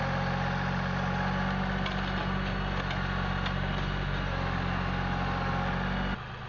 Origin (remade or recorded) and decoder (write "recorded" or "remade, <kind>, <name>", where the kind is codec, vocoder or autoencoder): recorded